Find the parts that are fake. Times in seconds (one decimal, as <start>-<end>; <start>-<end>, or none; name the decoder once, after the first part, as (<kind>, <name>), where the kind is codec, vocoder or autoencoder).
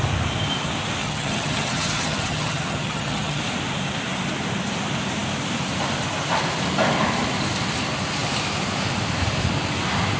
1.0-3.4 (vocoder, HiFi-GAN)